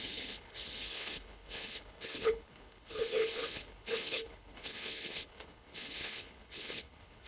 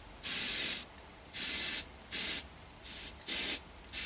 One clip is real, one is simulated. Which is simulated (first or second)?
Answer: first